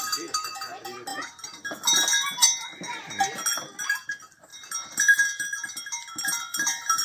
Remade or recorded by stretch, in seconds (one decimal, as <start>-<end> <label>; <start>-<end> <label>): 0.0-7.0 recorded